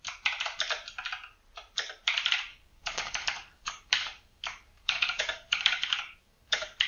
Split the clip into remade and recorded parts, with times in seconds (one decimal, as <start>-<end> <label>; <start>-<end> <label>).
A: 0.0-2.5 recorded; 2.5-6.9 remade